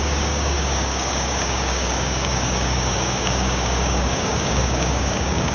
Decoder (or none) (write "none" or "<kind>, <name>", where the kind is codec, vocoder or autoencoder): codec, DAC